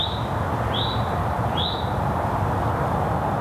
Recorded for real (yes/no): yes